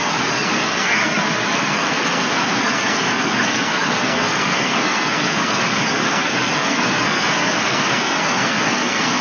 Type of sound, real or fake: fake